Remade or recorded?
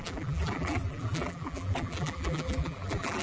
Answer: remade